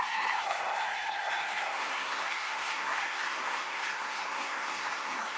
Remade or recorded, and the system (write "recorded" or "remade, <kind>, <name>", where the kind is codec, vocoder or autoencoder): remade, codec, SNAC